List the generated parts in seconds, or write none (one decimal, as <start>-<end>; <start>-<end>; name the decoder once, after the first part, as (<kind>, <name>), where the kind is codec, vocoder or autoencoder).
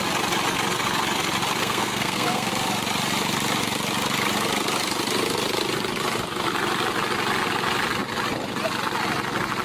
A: 1.6-2.5 (codec, SNAC)